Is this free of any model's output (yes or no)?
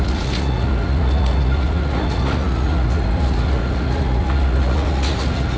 no